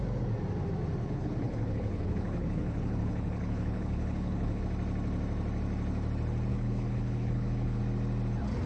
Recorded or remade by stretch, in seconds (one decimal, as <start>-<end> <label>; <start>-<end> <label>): 0.0-1.0 recorded; 1.0-4.6 remade; 4.6-6.5 recorded; 6.5-7.8 remade; 7.8-8.7 recorded